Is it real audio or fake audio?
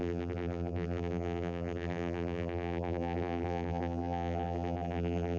fake